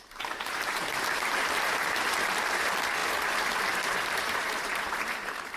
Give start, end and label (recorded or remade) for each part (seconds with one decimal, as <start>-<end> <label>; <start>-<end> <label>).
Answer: 0.0-5.6 remade